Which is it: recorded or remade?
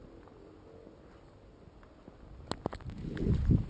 recorded